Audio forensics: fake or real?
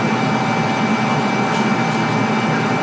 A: real